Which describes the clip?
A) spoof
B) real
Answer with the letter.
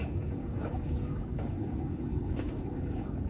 A